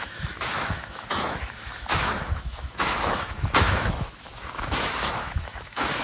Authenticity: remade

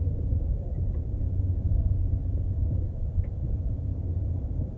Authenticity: remade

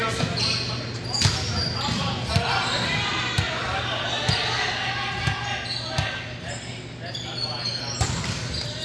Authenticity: recorded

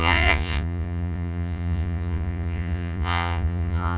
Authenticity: remade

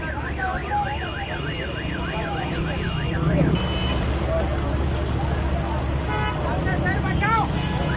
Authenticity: recorded